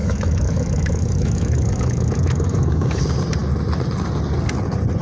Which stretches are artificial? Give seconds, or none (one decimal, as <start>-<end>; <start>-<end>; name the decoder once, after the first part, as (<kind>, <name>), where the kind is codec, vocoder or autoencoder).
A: 0.0-3.0 (autoencoder, DAC-VAE)